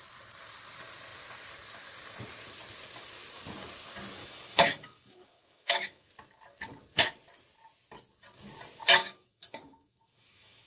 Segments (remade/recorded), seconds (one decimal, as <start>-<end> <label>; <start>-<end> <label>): 0.0-4.2 recorded; 4.2-6.1 remade; 6.1-9.0 recorded; 9.0-10.7 remade